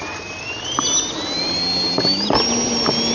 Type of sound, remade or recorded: recorded